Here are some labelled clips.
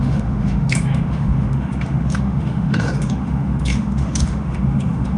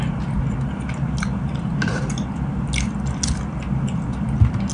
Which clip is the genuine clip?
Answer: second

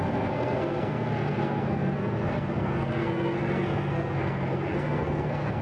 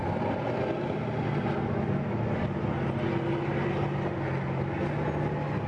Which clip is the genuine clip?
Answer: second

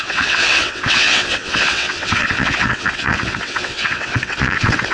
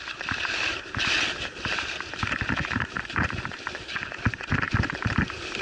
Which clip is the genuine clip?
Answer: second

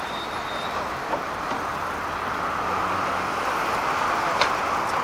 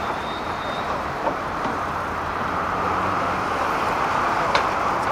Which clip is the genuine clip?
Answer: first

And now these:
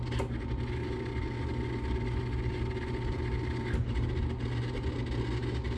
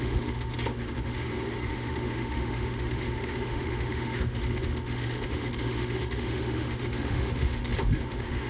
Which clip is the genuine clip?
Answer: first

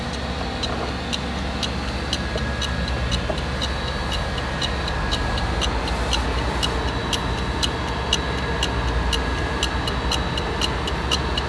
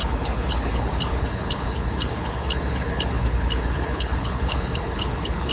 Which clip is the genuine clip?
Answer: first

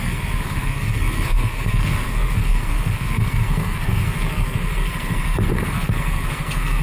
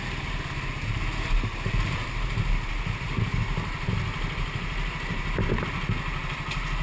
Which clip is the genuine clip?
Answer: second